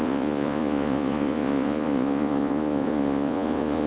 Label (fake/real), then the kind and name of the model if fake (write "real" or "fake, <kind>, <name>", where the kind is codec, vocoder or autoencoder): fake, vocoder, Vocos